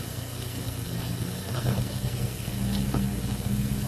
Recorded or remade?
remade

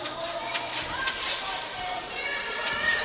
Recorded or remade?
remade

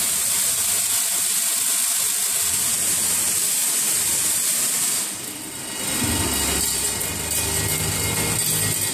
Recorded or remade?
recorded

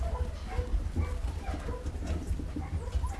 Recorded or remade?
recorded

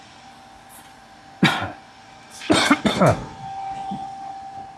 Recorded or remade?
recorded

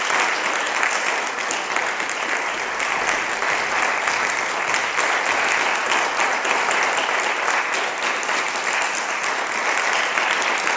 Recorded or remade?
recorded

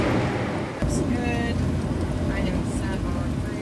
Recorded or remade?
recorded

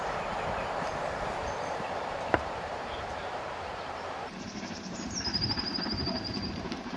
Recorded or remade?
remade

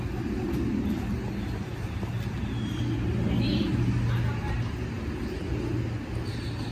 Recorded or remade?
recorded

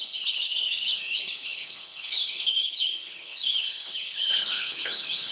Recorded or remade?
remade